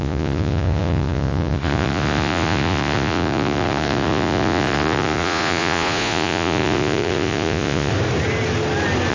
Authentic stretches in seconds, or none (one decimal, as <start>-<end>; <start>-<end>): 7.9-9.1